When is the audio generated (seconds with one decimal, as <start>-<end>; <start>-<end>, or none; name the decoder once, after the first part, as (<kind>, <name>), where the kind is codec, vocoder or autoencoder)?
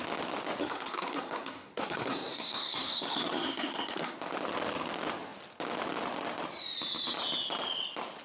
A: 0.6-4.2 (codec, SNAC)